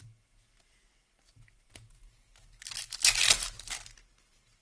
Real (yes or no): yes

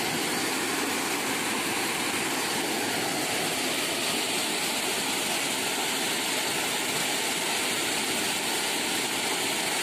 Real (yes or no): yes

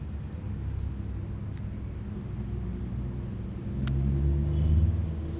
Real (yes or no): yes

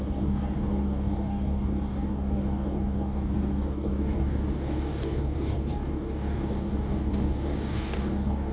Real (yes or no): no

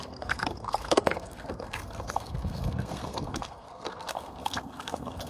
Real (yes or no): no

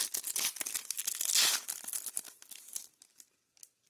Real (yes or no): yes